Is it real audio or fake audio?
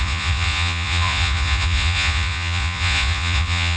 fake